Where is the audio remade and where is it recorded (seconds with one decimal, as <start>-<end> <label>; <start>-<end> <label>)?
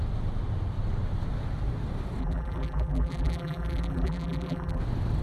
0.0-2.2 recorded; 2.2-4.8 remade; 4.8-5.2 recorded